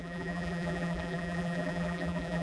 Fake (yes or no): yes